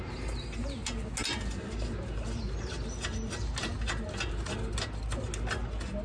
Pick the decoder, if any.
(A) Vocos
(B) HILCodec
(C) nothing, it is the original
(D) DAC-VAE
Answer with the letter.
C